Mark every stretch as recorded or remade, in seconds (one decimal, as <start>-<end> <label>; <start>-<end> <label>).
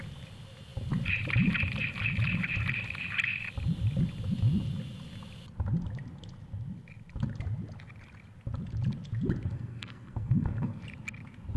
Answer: 0.0-9.5 recorded; 9.5-10.8 remade; 10.8-11.6 recorded